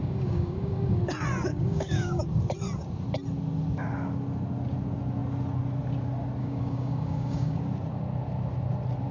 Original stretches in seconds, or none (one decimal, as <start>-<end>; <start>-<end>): 1.0-1.5; 2.2-6.4; 7.6-9.1

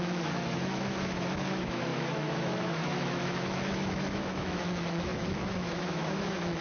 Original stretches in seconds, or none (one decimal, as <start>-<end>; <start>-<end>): none

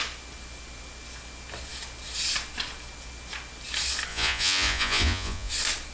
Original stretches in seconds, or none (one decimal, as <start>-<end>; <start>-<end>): 0.0-4.1; 5.5-5.9

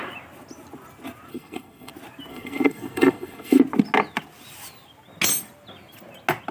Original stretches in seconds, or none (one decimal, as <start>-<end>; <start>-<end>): 0.0-1.3; 1.9-2.3; 3.6-6.5

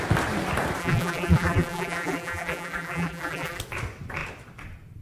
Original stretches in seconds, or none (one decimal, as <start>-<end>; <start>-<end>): 0.0-0.8; 3.6-5.0

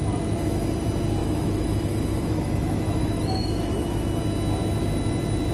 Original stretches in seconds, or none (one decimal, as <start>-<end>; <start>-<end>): 0.0-1.2; 4.2-5.5

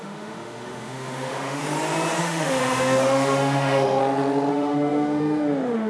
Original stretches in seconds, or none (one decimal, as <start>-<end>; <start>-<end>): 1.6-2.2; 4.0-4.5

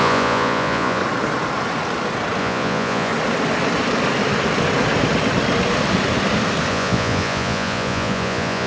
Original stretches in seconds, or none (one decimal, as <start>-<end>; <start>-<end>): 1.0-2.4; 3.1-6.7